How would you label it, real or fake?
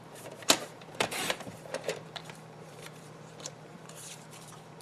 fake